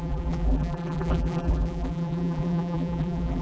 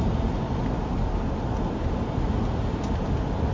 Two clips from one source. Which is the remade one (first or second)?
first